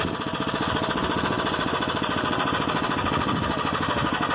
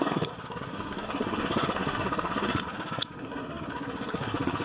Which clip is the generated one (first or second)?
second